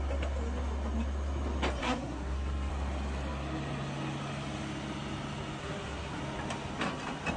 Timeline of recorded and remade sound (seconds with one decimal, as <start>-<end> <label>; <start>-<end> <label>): 0.0-1.8 recorded; 1.8-2.7 remade; 2.7-5.6 recorded; 5.6-6.2 remade; 6.2-7.4 recorded